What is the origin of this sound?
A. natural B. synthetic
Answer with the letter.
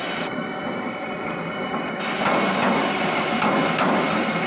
A